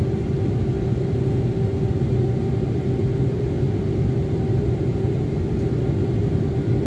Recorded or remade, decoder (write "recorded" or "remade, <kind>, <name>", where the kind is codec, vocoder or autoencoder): recorded